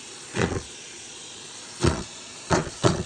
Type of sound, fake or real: fake